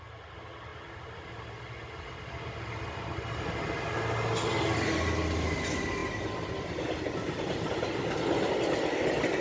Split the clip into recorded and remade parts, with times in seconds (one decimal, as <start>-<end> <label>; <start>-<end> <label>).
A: 0.0-9.4 recorded